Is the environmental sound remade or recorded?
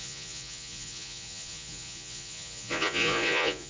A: remade